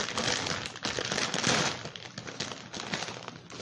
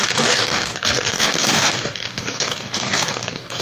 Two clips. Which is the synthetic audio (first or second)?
second